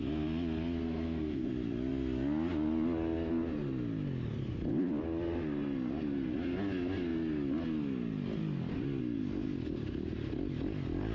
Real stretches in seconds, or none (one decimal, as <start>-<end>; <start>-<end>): 0.0-0.8; 1.5-11.1